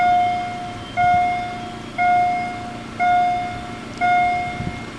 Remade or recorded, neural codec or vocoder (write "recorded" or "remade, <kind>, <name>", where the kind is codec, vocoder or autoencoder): recorded